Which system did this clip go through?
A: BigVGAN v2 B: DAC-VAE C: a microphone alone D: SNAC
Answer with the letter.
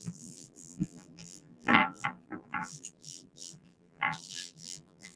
A